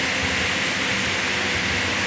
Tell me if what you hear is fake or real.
real